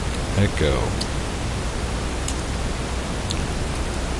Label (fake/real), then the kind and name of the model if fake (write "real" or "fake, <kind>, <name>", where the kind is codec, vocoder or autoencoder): real